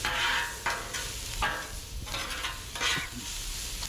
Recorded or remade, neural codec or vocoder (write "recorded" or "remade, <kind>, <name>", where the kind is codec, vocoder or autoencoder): recorded